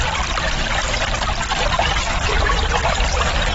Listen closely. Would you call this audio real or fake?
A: fake